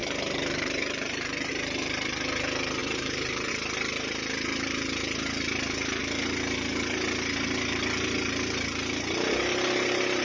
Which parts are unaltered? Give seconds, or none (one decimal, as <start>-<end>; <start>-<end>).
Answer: 1.5-2.8; 3.5-10.2